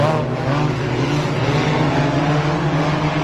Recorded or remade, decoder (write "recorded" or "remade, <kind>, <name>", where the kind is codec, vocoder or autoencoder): recorded